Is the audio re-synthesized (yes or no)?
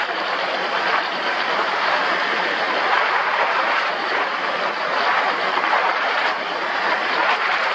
yes